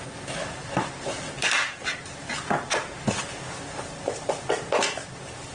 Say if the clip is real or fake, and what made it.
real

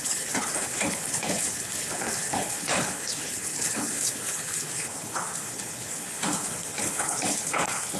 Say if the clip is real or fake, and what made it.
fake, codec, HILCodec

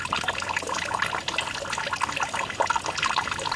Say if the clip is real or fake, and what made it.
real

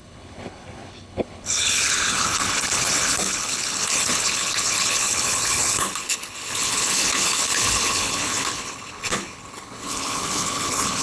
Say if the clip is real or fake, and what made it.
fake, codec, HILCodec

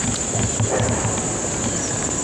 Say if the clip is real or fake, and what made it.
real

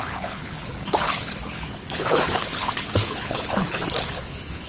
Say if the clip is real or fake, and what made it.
fake, codec, HILCodec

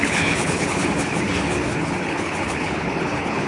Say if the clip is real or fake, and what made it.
fake, codec, HILCodec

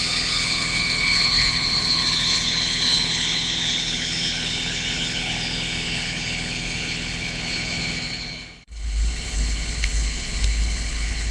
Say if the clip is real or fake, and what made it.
fake, codec, HILCodec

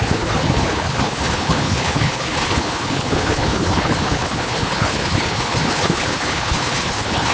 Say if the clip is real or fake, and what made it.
fake, codec, HILCodec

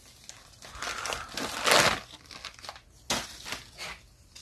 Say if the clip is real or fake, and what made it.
real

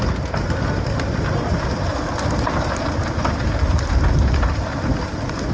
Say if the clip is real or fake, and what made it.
real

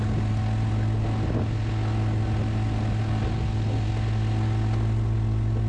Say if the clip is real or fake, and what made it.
real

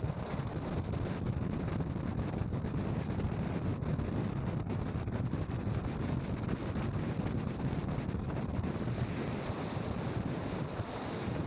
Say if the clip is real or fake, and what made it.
real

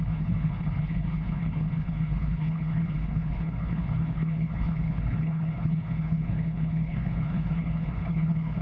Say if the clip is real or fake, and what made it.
fake, codec, HILCodec